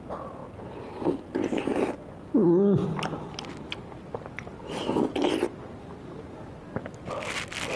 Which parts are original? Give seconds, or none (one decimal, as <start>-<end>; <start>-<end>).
0.0-7.8